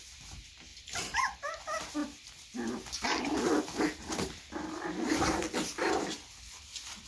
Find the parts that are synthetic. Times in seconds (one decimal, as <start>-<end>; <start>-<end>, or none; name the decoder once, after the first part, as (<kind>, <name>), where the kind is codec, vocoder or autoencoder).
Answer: none